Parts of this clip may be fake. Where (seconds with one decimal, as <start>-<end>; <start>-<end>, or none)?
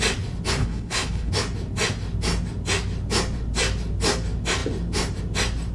0.6-1.3